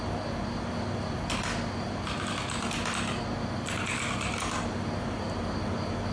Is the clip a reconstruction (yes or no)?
no